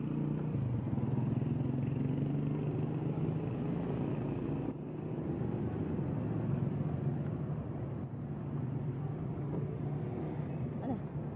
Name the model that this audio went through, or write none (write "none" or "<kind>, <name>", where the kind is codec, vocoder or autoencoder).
none